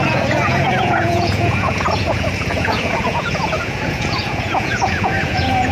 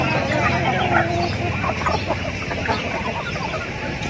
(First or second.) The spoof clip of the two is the first